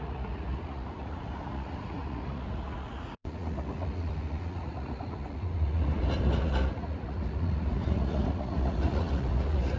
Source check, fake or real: fake